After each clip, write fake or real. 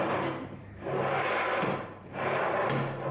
real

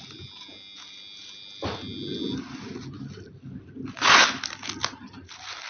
real